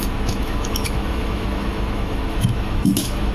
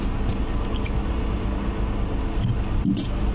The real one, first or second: second